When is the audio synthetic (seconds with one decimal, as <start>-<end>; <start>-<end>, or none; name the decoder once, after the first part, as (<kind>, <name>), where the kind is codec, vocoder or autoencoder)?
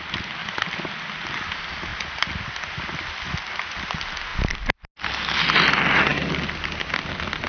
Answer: none